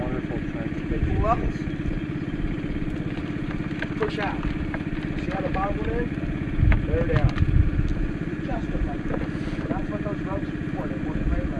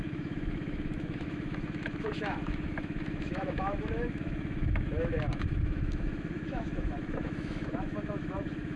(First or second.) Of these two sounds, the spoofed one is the second